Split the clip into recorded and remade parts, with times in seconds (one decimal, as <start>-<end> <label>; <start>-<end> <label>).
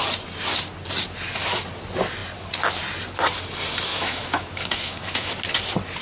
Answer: 0.0-3.9 recorded; 3.9-5.3 remade; 5.3-6.0 recorded